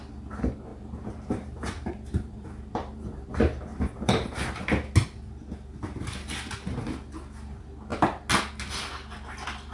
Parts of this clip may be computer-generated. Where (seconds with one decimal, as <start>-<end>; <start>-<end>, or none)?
0.7-3.3; 3.7-4.6